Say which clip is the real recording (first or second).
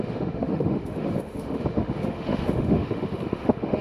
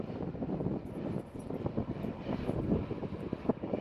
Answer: second